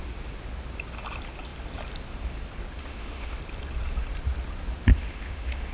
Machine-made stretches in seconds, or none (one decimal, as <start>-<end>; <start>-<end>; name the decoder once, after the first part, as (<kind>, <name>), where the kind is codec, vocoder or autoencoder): 2.8-3.4 (autoencoder, DAC-VAE); 4.9-5.7